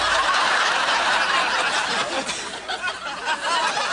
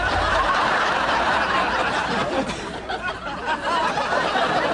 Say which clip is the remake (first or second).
second